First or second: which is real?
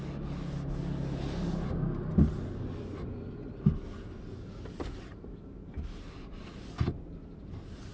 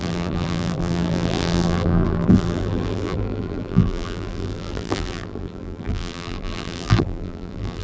first